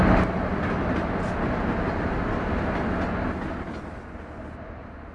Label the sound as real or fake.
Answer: real